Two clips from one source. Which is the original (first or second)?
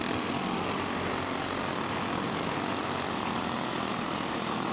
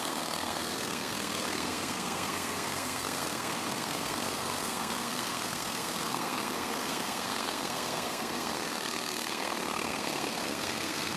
first